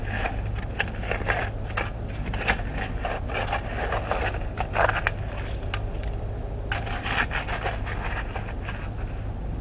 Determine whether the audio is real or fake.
real